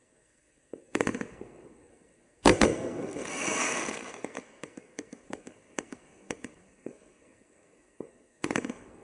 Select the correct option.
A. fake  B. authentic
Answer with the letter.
A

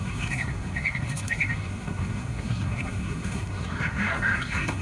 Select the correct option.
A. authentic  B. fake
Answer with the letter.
B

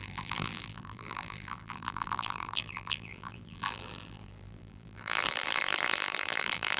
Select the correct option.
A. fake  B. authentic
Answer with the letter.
A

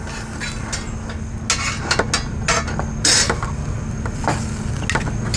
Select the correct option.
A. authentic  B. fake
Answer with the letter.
A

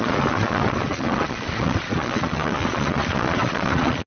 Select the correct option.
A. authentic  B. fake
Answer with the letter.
B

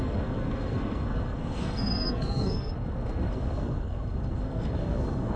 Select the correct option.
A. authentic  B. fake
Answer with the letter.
B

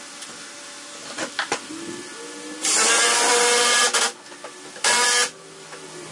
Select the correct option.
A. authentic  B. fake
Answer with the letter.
A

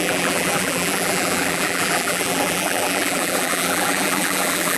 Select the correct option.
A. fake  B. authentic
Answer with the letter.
A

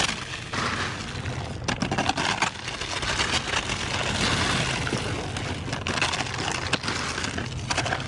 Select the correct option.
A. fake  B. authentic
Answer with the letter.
B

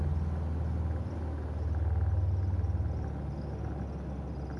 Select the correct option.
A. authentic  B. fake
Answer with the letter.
A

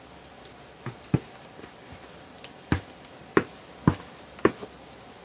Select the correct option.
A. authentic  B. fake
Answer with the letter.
A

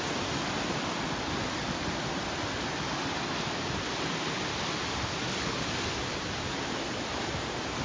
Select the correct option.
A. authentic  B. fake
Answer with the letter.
A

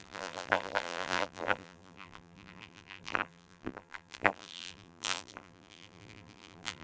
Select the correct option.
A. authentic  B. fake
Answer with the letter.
B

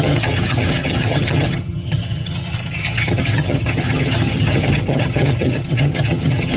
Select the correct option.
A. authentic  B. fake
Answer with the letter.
B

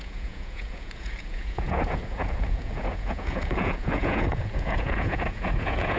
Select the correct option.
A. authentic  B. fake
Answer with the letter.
B